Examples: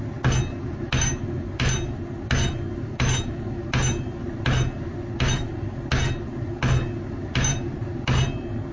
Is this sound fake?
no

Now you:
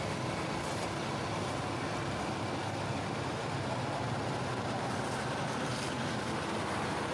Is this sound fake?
no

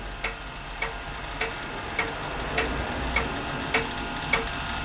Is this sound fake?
no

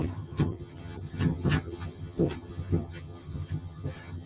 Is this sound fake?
yes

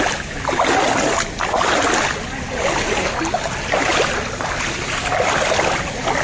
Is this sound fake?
no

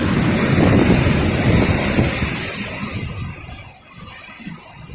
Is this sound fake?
no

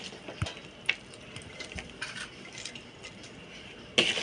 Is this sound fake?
no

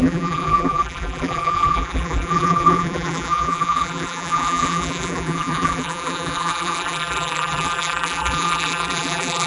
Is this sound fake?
yes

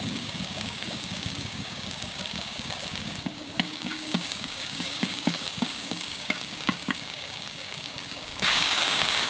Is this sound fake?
yes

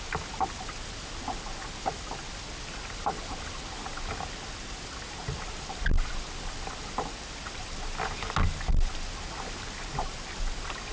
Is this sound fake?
no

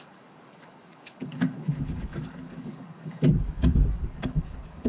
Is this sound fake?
yes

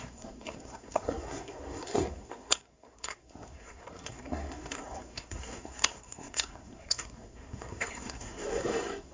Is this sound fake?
yes